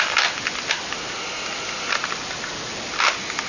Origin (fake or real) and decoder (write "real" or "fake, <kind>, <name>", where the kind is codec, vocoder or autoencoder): real